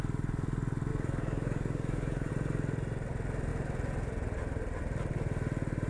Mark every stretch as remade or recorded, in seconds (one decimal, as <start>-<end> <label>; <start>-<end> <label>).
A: 0.0-0.9 recorded; 0.9-2.3 remade; 2.3-5.9 recorded